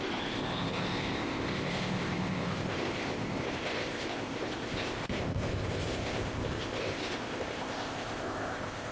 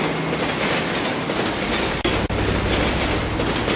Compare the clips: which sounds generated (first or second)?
first